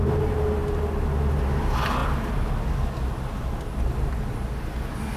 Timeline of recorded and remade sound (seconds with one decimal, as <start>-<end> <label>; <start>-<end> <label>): 0.0-5.2 recorded